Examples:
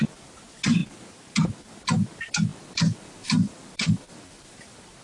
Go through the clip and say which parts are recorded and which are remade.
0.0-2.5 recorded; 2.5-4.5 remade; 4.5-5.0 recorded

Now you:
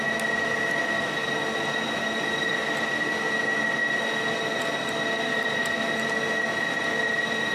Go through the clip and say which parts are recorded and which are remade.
0.0-7.5 recorded